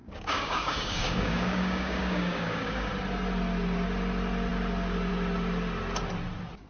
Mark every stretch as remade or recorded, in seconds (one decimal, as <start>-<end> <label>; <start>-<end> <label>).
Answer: 0.0-2.9 remade; 2.9-6.7 recorded